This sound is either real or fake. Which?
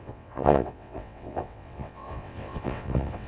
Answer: fake